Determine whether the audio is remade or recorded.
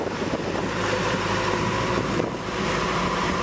remade